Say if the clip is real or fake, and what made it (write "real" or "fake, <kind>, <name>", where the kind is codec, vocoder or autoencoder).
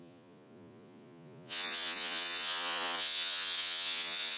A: fake, vocoder, Vocos